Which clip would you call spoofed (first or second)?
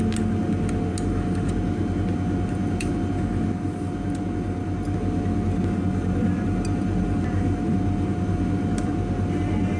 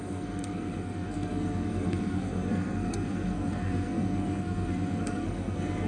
second